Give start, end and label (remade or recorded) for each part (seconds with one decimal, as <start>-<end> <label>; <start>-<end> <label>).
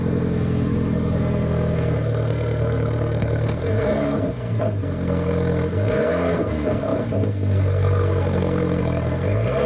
0.0-9.7 remade